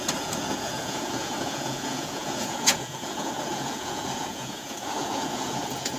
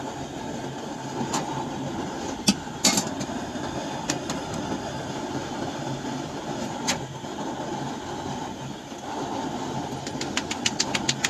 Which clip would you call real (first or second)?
second